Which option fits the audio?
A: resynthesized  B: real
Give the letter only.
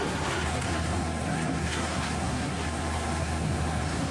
A